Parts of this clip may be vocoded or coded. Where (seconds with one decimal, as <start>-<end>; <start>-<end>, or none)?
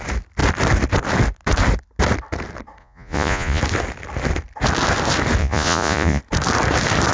2.8-3.6; 5.4-6.2